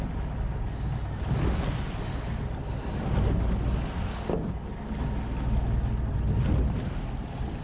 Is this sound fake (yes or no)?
no